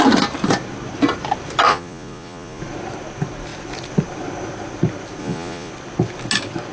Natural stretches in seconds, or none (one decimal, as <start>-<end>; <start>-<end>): 0.0-1.7; 2.6-5.2; 5.7-6.7